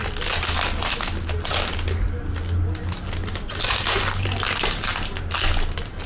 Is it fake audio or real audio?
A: real